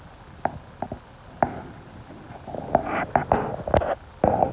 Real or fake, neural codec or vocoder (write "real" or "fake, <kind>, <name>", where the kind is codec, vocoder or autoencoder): real